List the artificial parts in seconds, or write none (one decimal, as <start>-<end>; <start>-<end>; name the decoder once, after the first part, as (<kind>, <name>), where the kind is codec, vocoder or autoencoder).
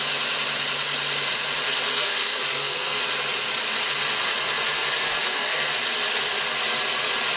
1.9-3.0 (codec, SNAC); 5.1-5.7